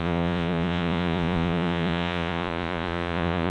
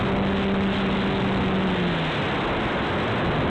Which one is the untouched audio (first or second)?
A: second